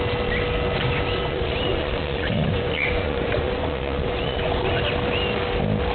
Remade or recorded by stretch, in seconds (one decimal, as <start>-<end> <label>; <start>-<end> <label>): 0.0-1.3 recorded; 1.3-4.7 remade; 4.7-5.9 recorded